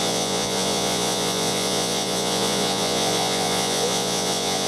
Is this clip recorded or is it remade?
remade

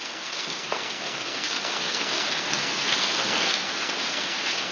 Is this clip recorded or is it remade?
remade